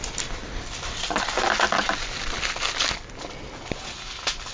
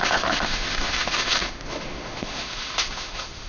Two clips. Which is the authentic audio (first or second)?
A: first